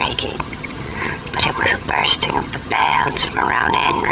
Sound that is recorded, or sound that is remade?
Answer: remade